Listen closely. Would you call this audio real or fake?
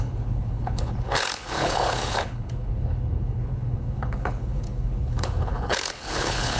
fake